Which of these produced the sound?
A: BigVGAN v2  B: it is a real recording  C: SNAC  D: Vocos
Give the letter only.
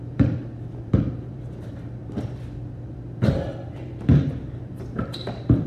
A